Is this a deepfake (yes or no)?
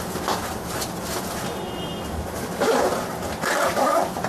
no